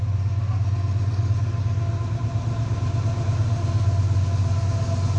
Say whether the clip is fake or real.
real